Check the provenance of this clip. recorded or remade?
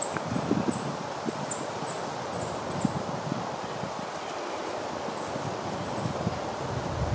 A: recorded